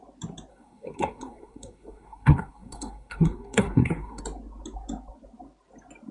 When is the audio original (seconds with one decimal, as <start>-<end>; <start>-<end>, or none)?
0.0-0.5; 4.2-6.1